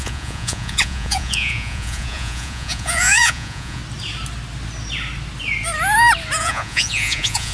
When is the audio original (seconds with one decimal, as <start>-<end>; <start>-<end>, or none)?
3.8-6.4